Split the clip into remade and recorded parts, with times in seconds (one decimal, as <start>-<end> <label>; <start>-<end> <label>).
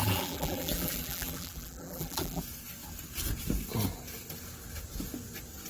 0.0-2.4 remade; 2.4-5.7 recorded